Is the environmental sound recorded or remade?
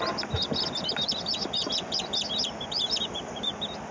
recorded